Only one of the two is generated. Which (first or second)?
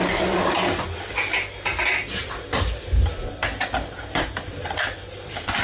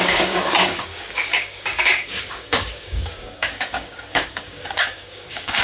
second